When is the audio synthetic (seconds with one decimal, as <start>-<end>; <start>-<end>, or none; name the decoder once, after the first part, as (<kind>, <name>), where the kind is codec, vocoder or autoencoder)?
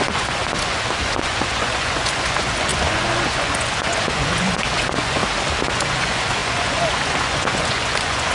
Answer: 0.0-5.2 (vocoder, Vocos); 5.7-8.3